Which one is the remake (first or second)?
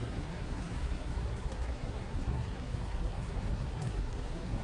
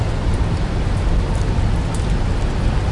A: first